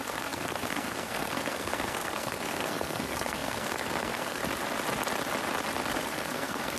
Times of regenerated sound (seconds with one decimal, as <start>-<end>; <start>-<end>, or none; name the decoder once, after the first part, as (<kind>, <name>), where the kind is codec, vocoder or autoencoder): 0.0-4.4 (codec, SNAC); 5.9-6.8